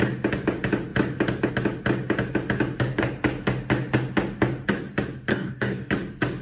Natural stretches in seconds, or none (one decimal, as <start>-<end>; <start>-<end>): 0.0-5.3; 5.9-6.4